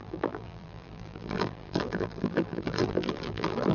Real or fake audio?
fake